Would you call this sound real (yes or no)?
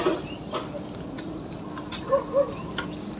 yes